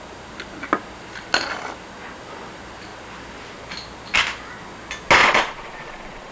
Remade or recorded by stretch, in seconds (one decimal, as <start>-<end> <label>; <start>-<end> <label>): 0.0-5.2 recorded; 5.2-6.3 remade

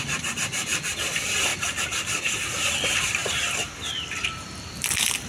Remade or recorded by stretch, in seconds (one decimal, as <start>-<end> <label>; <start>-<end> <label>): 0.0-1.5 remade; 1.5-2.2 recorded; 2.2-5.3 remade

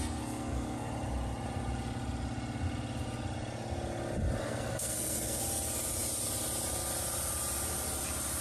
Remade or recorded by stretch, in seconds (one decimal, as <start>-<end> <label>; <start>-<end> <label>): 0.0-0.9 remade; 0.9-4.4 recorded; 4.4-5.4 remade; 5.4-8.4 recorded

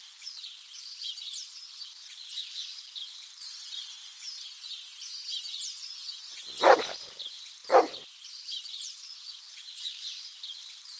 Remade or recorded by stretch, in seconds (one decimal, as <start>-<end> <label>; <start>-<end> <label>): 0.0-4.0 remade; 4.0-6.6 recorded; 6.6-7.6 remade; 7.6-8.3 recorded; 8.3-11.0 remade

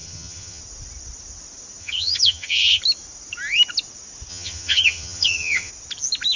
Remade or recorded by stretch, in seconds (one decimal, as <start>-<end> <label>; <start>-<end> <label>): 0.0-0.6 remade; 0.6-1.8 recorded; 1.8-2.8 remade; 2.8-4.3 recorded; 4.3-5.7 remade; 5.7-6.4 recorded

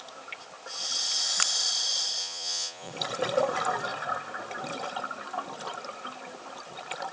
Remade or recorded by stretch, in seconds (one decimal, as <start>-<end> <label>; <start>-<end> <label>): 0.0-2.2 recorded; 2.2-2.9 remade; 2.9-7.1 recorded